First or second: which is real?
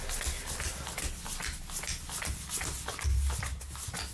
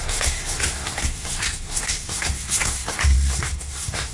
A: first